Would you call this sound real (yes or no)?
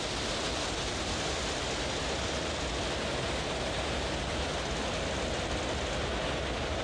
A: yes